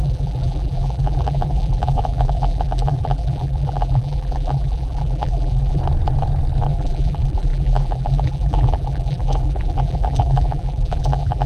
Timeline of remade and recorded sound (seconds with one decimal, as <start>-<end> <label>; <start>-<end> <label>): 0.0-5.8 remade; 5.8-6.7 recorded; 6.7-11.5 remade